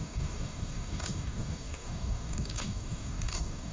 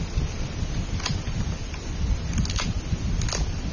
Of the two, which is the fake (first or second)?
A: first